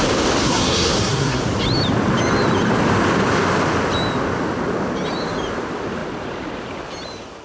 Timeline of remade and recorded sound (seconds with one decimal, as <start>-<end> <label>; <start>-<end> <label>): 0.0-0.4 recorded; 0.4-1.4 remade; 1.4-7.4 recorded